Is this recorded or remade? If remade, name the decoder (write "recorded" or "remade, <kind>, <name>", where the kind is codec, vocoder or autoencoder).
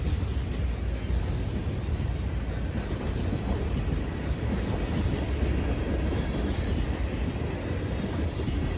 recorded